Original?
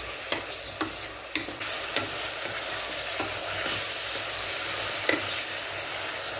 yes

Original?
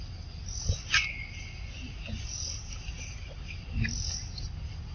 yes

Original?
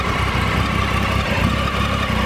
yes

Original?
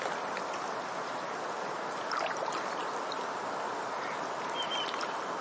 yes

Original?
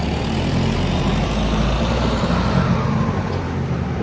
no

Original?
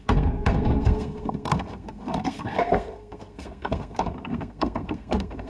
no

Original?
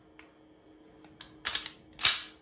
yes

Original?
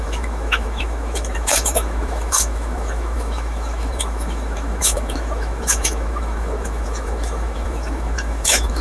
no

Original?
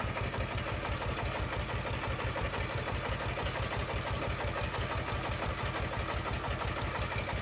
yes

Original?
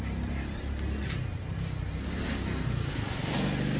yes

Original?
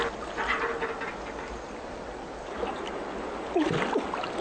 yes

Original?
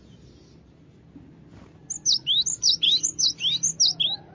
yes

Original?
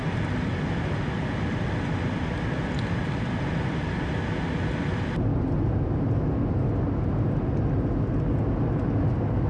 yes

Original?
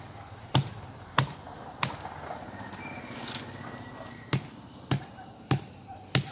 yes